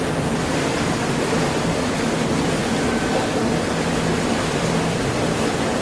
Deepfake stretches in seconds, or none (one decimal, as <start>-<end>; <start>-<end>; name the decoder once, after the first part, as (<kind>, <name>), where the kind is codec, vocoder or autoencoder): none